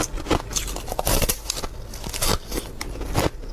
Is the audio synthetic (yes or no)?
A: no